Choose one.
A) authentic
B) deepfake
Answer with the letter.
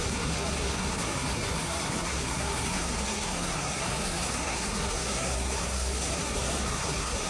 B